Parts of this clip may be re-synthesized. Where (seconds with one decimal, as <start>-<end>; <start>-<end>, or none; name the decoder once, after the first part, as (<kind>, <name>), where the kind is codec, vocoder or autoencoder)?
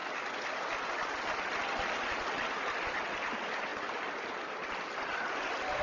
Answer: none